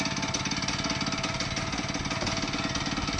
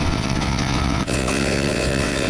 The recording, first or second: first